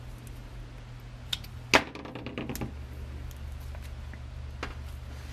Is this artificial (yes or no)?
no